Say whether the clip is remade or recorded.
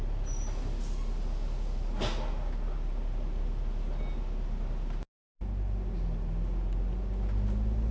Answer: recorded